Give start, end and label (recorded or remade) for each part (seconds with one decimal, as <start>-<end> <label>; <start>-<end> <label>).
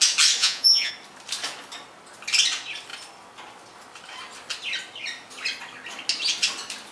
0.0-0.4 recorded; 0.4-0.9 remade; 0.9-6.9 recorded